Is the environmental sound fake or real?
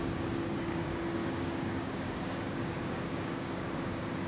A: fake